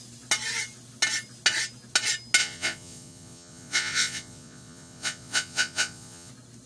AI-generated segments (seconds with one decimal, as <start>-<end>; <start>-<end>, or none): 2.4-6.3